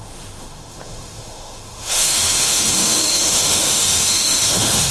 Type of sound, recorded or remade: remade